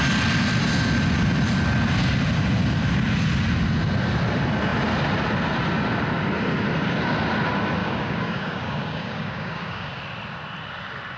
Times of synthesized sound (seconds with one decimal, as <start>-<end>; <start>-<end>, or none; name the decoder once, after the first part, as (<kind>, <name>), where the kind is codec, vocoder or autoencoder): 7.8-10.0 (codec, DAC)